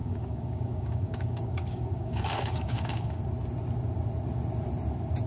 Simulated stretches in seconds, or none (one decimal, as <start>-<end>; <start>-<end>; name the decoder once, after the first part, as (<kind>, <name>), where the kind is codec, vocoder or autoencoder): 0.0-3.2 (codec, DAC)